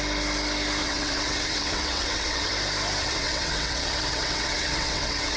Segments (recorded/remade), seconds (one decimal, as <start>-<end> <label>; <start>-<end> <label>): 0.0-0.8 recorded; 0.8-2.5 remade; 2.5-3.0 recorded; 3.0-5.4 remade